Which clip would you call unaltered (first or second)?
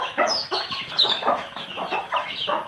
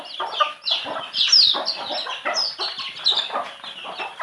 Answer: second